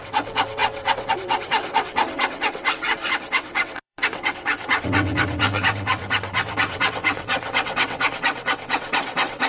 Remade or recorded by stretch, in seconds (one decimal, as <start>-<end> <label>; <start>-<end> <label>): 0.0-9.5 remade